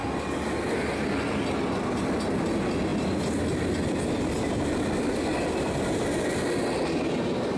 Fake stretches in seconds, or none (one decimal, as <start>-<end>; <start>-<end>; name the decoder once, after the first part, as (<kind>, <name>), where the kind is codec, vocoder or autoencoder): none